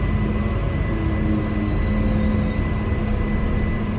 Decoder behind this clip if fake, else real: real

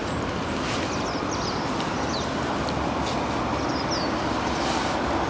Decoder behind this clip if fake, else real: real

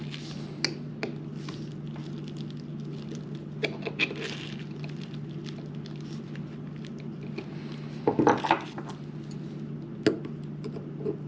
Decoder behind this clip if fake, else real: real